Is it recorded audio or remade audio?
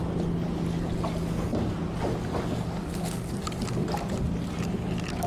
recorded